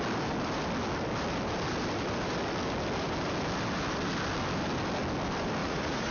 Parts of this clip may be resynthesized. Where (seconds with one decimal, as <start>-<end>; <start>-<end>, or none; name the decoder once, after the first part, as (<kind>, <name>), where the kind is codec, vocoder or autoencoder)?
5.6-6.1 (vocoder, Vocos)